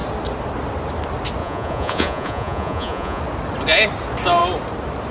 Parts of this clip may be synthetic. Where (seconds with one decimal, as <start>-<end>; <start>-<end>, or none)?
1.4-3.2